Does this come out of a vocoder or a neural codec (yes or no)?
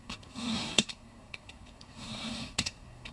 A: yes